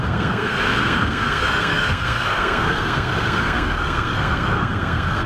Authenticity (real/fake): fake